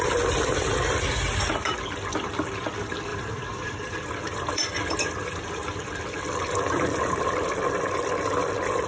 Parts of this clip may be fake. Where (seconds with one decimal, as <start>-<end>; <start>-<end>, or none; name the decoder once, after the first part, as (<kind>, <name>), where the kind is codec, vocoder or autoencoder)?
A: 3.1-7.1 (vocoder, BigVGAN v2)